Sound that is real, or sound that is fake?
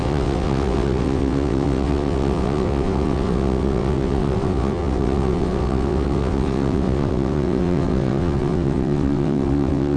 fake